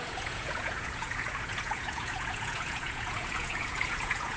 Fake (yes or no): yes